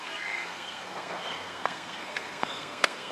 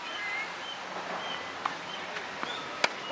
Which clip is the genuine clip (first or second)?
second